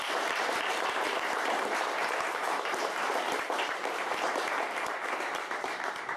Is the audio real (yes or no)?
no